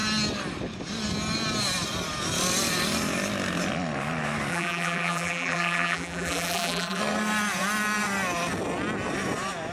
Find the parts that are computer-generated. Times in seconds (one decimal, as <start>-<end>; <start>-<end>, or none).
4.5-7.0